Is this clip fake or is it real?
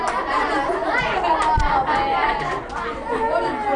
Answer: real